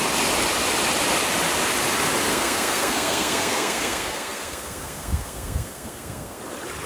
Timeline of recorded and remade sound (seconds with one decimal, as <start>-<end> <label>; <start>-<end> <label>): 0.0-2.3 recorded; 2.3-6.4 remade; 6.4-6.9 recorded